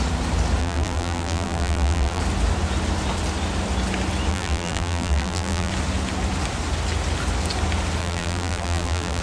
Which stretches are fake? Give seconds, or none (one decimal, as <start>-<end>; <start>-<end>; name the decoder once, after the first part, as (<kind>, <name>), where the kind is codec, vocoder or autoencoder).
0.6-2.2 (vocoder, BigVGAN v2); 4.3-5.7; 8.0-9.2